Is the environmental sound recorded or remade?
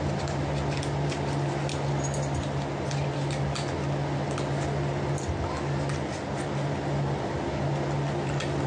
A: recorded